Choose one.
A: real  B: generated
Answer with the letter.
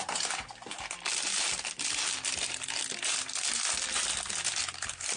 A